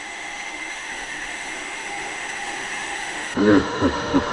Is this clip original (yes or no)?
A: no